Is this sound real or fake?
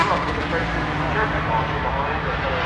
real